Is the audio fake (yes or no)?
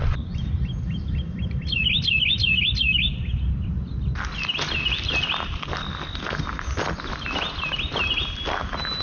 no